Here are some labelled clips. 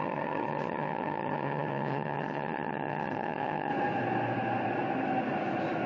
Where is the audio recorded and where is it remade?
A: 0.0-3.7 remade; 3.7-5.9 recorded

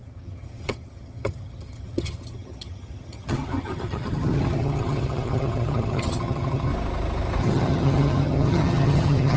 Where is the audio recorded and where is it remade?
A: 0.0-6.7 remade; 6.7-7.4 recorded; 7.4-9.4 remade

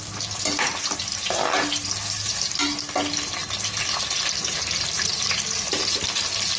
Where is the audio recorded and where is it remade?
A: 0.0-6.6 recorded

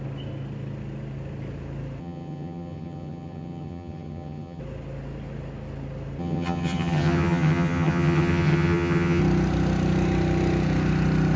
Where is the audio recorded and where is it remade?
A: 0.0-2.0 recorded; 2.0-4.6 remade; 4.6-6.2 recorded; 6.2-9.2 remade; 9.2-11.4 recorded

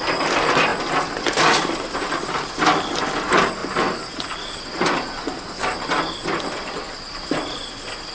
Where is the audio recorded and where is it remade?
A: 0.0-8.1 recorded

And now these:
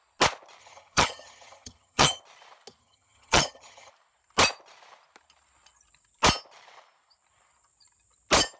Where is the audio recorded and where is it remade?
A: 0.0-0.6 recorded; 0.6-2.2 remade; 2.2-2.8 recorded; 2.8-3.9 remade; 3.9-8.6 recorded

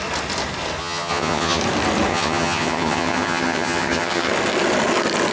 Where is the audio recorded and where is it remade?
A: 0.0-0.8 recorded; 0.8-1.6 remade; 1.6-2.1 recorded; 2.1-4.3 remade; 4.3-5.3 recorded